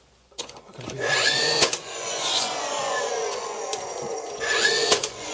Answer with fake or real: fake